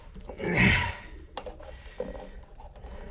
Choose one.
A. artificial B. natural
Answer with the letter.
B